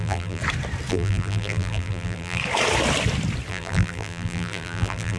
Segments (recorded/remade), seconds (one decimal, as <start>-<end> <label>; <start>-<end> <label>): 0.0-0.4 remade; 0.4-0.9 recorded; 0.9-2.4 remade; 2.4-3.5 recorded; 3.5-5.2 remade